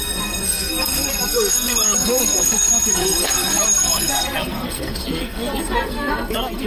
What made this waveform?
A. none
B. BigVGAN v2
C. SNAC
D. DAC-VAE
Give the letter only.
C